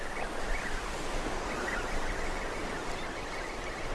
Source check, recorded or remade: recorded